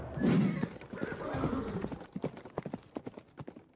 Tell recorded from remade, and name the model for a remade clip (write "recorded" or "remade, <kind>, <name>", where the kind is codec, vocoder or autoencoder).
recorded